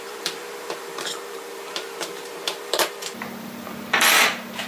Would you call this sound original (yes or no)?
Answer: no